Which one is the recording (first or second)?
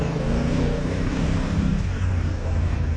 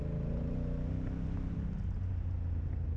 second